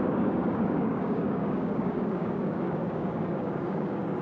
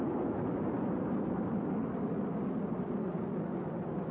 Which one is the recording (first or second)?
second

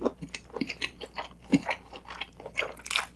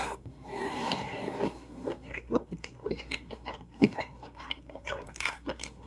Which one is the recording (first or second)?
first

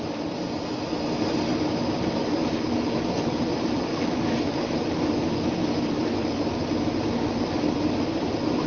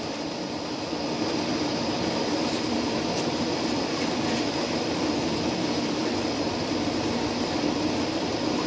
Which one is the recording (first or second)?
first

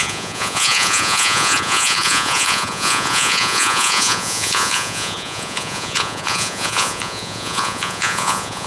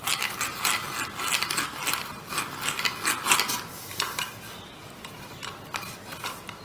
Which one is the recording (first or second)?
second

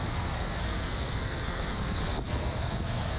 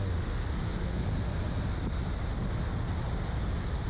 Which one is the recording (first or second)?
second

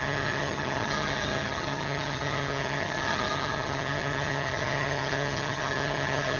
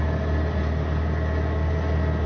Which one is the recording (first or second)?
second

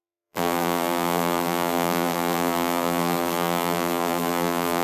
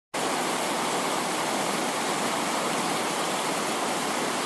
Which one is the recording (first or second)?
second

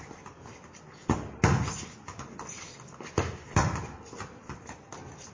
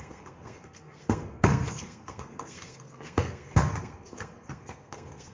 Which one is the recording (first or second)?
first